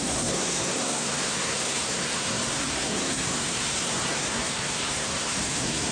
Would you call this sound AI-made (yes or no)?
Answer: yes